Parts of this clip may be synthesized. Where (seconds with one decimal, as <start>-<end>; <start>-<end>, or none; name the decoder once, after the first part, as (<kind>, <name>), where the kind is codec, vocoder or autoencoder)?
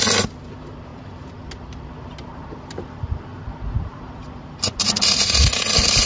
0.9-3.2 (vocoder, BigVGAN v2)